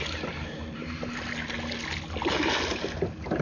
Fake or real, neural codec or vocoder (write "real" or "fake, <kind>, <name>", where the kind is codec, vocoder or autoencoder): real